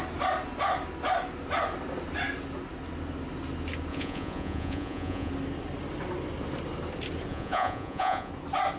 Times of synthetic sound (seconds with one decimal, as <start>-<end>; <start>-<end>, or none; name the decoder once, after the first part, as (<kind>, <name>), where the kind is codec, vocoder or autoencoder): 3.9-5.3 (vocoder, Vocos); 7.3-8.3